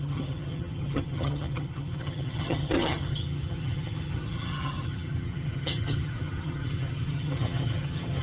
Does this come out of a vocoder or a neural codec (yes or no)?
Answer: yes